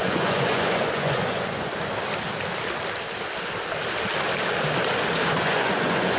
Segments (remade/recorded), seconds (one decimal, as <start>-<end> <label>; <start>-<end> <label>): 0.0-1.7 remade; 1.7-5.4 recorded; 5.4-6.2 remade